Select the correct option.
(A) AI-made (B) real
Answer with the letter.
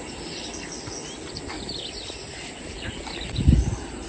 B